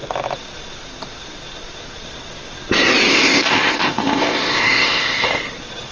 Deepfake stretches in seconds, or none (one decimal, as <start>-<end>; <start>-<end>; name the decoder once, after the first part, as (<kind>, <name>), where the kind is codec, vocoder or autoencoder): 3.1-5.4 (codec, ZipCodec)